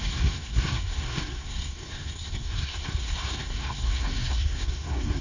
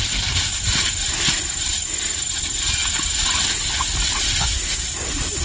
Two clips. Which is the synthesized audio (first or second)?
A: first